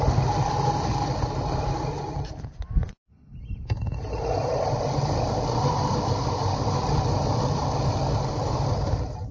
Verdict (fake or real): real